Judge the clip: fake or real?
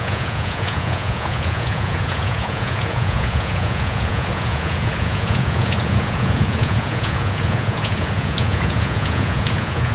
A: fake